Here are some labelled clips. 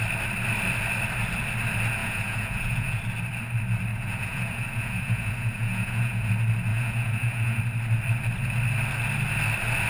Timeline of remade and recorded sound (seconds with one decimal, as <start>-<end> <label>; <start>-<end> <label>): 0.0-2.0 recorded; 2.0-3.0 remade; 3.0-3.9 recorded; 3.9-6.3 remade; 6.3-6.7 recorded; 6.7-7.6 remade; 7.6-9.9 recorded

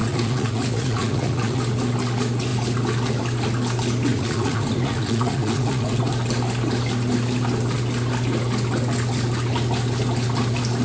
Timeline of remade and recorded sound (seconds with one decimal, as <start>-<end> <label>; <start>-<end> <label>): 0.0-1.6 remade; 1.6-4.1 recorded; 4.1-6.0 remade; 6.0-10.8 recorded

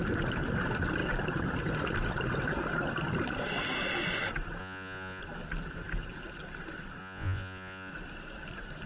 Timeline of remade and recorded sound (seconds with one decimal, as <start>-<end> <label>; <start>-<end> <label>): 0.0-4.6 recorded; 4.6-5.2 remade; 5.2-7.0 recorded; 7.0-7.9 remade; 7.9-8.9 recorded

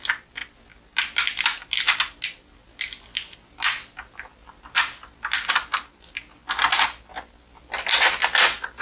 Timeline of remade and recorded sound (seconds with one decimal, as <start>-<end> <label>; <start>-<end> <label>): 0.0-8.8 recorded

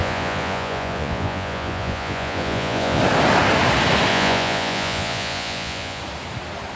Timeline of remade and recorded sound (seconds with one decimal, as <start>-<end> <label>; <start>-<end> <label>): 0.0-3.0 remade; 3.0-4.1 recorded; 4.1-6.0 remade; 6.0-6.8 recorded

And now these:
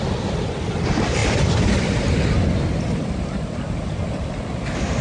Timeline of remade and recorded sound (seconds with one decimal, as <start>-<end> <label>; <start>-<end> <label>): 0.0-5.0 recorded

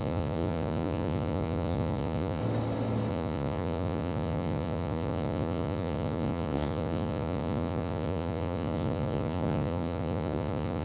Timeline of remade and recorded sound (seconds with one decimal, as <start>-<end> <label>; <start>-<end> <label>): 0.0-2.4 remade; 2.4-3.1 recorded; 3.1-10.8 remade